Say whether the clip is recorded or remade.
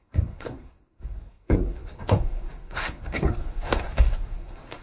remade